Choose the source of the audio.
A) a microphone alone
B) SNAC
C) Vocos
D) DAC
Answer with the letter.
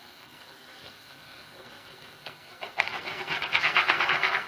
B